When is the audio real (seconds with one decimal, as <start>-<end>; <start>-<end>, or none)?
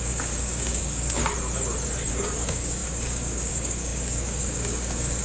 1.2-2.1